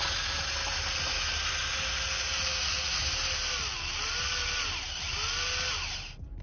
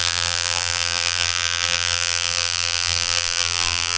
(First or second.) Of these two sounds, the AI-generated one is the second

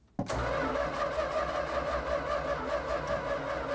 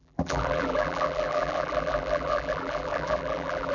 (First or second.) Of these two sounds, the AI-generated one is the second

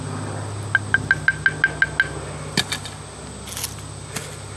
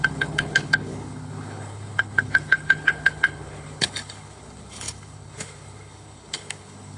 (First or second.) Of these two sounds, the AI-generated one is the second